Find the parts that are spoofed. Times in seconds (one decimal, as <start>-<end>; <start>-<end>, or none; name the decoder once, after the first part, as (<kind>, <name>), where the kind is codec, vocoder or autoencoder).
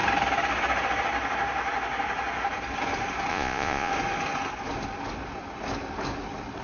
3.3-3.9 (vocoder, Vocos)